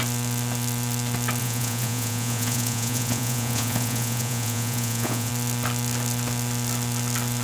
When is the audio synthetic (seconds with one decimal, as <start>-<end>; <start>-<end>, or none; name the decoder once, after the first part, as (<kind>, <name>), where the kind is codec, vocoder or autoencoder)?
1.4-5.3 (vocoder, Vocos)